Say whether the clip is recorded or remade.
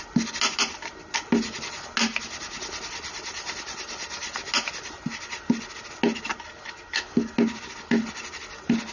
recorded